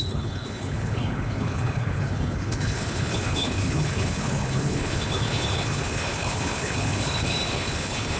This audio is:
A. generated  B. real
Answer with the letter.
A